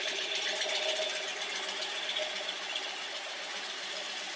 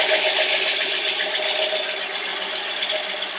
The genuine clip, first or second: second